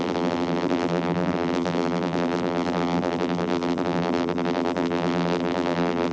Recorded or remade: remade